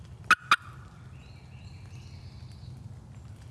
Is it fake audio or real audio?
real